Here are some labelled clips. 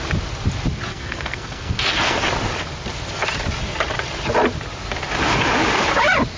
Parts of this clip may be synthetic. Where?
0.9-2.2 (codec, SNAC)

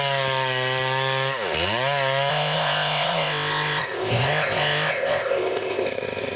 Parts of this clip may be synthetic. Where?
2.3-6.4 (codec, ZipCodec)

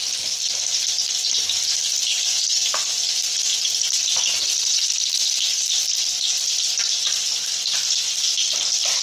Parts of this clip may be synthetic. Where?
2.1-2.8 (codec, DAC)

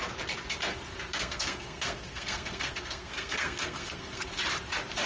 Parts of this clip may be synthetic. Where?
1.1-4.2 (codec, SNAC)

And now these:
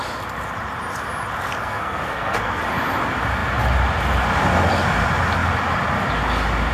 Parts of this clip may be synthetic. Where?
1.6-2.6 (codec, SNAC)

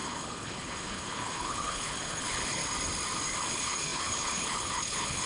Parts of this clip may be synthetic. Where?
0.0-2.6 (codec, HILCodec); 3.4-5.3